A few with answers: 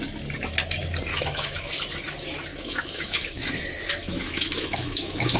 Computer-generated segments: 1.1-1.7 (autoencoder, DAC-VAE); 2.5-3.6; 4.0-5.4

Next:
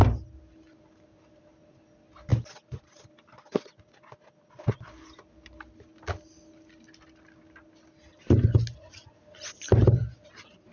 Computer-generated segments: none

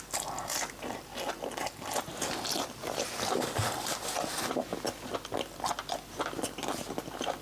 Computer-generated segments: none

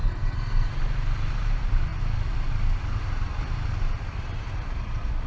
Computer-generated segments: 0.0-0.7 (codec, SNAC)

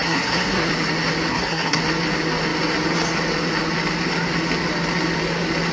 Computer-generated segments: 0.0-0.7 (codec, SNAC); 1.3-1.8